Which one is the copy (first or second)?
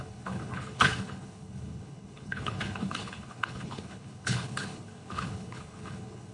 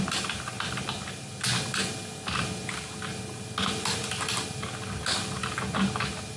first